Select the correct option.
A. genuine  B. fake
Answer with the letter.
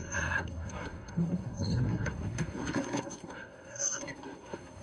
B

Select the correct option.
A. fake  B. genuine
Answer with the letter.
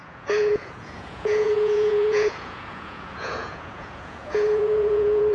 A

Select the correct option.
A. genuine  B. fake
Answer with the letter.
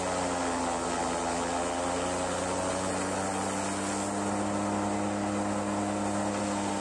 A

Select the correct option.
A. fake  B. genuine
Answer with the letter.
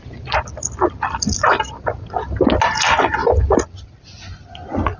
B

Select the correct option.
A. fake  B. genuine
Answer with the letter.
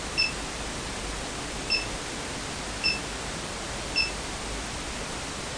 B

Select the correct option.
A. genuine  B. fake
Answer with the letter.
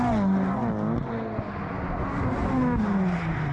A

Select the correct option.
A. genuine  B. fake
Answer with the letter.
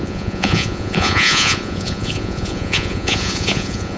B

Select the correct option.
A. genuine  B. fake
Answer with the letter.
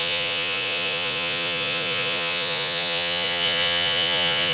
B